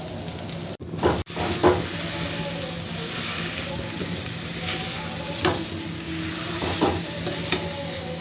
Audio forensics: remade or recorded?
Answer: recorded